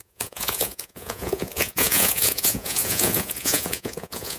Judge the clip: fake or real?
fake